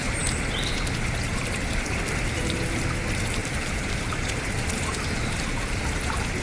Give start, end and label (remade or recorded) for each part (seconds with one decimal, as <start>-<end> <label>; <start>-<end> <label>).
0.0-3.4 recorded; 3.4-4.3 remade; 4.3-6.4 recorded